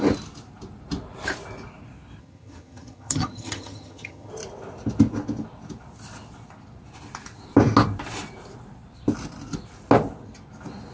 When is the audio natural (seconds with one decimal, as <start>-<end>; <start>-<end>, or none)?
0.0-2.2; 4.3-10.9